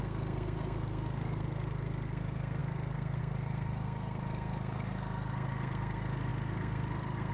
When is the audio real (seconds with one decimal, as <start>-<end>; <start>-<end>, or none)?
none